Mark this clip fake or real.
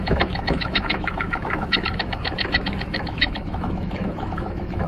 fake